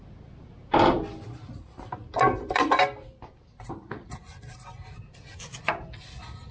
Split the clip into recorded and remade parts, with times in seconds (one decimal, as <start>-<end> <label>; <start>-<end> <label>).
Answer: 0.0-6.5 recorded